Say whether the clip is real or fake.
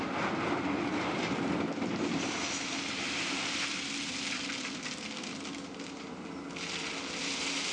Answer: real